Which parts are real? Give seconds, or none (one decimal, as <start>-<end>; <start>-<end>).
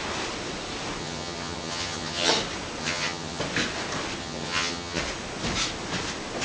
0.0-1.0; 2.3-2.8; 3.4-4.2; 5.0-6.4